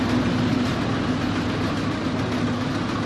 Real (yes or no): yes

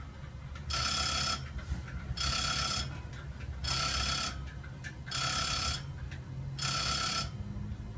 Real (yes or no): yes